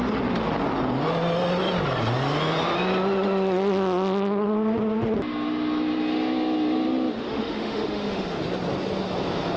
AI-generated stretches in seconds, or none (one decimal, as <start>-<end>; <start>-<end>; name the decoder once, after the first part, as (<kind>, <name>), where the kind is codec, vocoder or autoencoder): 7.3-8.4 (autoencoder, DAC-VAE)